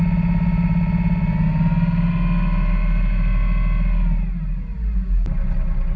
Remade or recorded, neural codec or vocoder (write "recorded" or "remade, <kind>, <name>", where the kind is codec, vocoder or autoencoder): recorded